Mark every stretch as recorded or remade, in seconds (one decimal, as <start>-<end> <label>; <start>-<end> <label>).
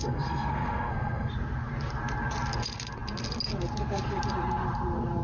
0.0-1.3 remade; 1.3-5.2 recorded